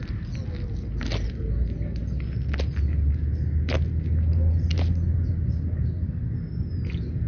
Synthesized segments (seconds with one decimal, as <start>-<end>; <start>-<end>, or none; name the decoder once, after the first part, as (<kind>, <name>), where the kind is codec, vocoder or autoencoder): none